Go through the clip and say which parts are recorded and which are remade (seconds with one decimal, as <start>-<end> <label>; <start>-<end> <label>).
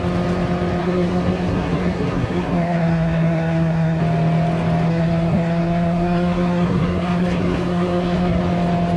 0.0-0.8 recorded; 0.8-4.0 remade; 4.0-4.9 recorded; 4.9-8.4 remade; 8.4-9.0 recorded